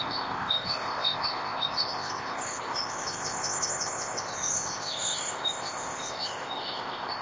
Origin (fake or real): fake